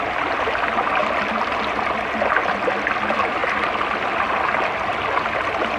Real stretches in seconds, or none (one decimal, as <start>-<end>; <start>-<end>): 0.0-5.8